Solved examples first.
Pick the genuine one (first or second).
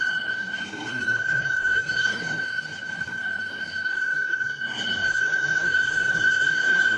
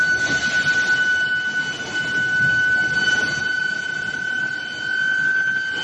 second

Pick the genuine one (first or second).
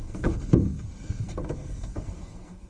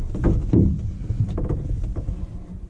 second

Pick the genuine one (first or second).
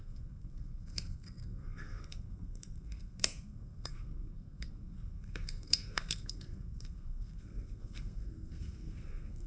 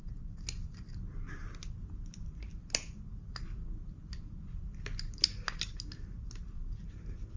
second